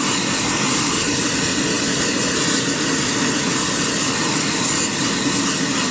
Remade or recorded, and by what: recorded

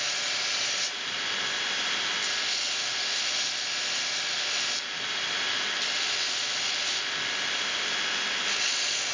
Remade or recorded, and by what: recorded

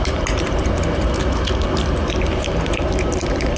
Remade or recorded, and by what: remade, vocoder, BigVGAN v2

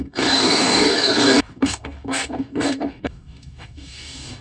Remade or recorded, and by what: remade, codec, DAC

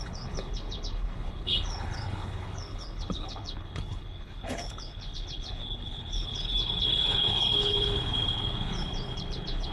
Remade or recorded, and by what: remade, codec, HILCodec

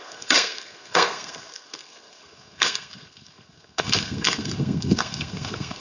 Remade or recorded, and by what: remade, codec, SNAC